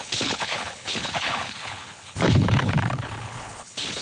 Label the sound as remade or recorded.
remade